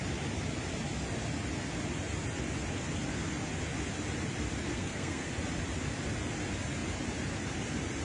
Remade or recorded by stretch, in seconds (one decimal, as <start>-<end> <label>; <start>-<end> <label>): 0.0-4.7 recorded; 4.7-5.3 remade; 5.3-8.0 recorded